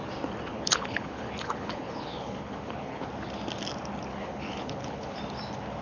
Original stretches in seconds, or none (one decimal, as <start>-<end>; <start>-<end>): 0.0-0.5; 3.1-4.1; 5.2-5.8